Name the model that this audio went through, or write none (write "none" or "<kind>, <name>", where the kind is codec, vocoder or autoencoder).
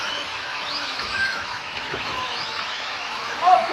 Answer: autoencoder, DAC-VAE